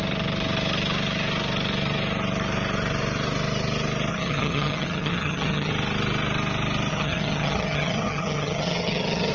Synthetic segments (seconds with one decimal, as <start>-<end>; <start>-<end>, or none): 4.1-5.7; 6.9-9.3